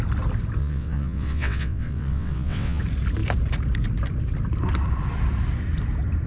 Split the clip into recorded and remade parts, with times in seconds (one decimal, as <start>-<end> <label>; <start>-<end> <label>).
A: 0.0-0.6 recorded; 0.6-2.8 remade; 2.8-6.3 recorded